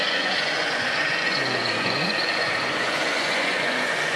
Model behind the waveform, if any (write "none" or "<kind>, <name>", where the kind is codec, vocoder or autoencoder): vocoder, Vocos